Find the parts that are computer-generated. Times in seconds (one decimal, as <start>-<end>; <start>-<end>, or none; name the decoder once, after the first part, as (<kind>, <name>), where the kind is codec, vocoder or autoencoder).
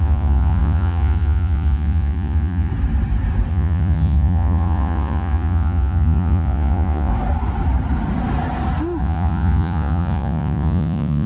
0.0-2.7 (vocoder, Vocos); 3.5-7.1; 9.0-11.3